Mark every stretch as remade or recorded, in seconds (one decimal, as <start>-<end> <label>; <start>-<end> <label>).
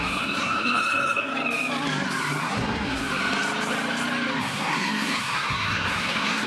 0.0-1.3 remade; 1.3-2.4 recorded; 2.4-3.0 remade; 3.0-4.4 recorded; 4.4-6.5 remade